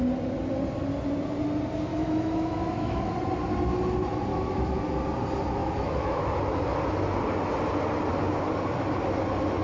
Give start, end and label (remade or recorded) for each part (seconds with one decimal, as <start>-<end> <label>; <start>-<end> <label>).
0.0-1.9 recorded; 1.9-3.1 remade; 3.1-4.3 recorded; 4.3-4.8 remade; 4.8-5.6 recorded; 5.6-6.3 remade; 6.3-9.6 recorded